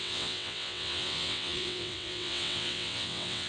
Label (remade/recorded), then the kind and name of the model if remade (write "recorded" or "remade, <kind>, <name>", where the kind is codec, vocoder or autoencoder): remade, vocoder, WaveNeXt